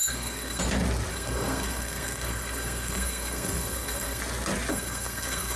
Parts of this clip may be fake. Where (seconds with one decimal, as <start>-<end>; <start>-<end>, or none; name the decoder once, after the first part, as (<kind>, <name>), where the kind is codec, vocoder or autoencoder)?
0.0-0.6 (codec, SNAC); 1.1-4.2; 4.7-5.6